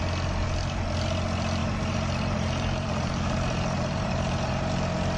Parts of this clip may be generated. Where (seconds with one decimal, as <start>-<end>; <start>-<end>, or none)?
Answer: 1.6-4.7